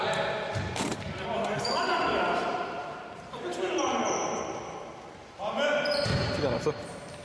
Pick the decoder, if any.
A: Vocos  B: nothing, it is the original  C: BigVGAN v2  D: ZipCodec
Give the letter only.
C